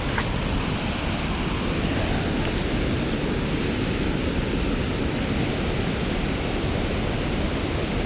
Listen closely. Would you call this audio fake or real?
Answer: real